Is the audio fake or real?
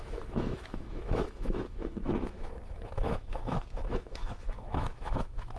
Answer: fake